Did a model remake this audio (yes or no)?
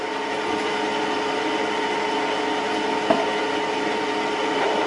no